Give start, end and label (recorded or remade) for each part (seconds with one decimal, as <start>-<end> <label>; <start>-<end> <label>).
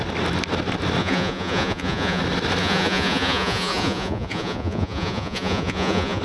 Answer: 0.0-1.0 recorded; 1.0-2.2 remade; 2.2-2.6 recorded; 2.6-6.2 remade